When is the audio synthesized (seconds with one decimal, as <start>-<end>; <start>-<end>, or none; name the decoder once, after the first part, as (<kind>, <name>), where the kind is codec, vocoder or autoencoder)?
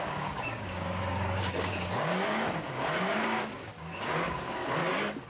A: 0.0-4.8 (codec, DAC)